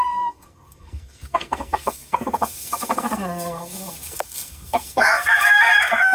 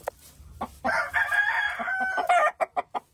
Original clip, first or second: second